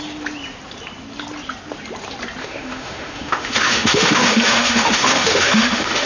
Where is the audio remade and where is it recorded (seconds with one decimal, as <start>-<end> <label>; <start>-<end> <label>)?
0.0-2.4 recorded; 2.4-6.1 remade

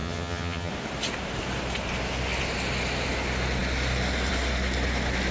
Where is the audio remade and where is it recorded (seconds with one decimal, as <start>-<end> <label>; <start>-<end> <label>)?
0.0-0.7 remade; 0.7-5.3 recorded

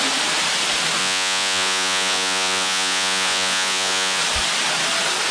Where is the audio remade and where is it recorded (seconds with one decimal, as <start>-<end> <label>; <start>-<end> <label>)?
0.0-1.0 recorded; 1.0-4.2 remade; 4.2-5.3 recorded

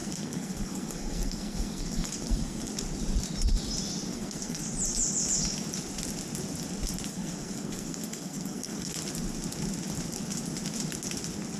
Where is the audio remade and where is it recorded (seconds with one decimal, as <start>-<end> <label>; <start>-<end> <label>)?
0.0-2.7 remade; 2.7-4.1 recorded; 4.1-4.7 remade; 4.7-7.1 recorded; 7.1-8.9 remade; 8.9-11.6 recorded

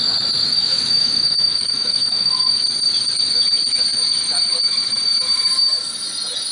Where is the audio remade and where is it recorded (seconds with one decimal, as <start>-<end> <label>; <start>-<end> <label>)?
0.0-0.4 recorded; 0.4-2.5 remade; 2.5-6.5 recorded

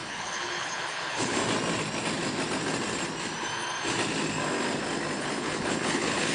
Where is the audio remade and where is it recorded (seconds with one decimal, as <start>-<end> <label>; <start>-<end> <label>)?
0.0-1.4 remade; 1.4-5.2 recorded; 5.2-6.3 remade

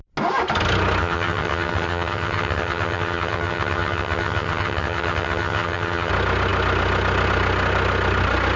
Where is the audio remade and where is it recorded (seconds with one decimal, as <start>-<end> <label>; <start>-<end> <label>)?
0.0-1.0 recorded; 1.0-6.1 remade; 6.1-8.6 recorded